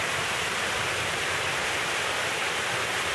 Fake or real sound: real